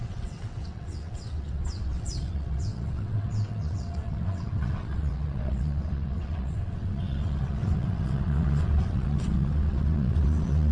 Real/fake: fake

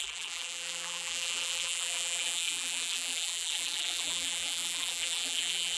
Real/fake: fake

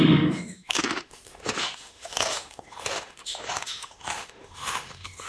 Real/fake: fake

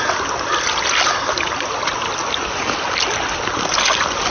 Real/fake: real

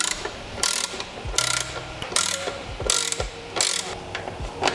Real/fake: real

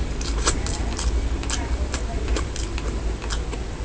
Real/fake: real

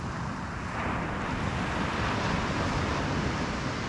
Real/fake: real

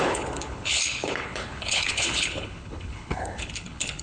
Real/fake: fake